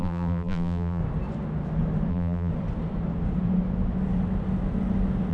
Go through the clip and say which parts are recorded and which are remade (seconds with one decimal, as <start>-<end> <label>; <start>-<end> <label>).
0.0-1.0 remade; 1.0-2.1 recorded; 2.1-2.5 remade; 2.5-5.3 recorded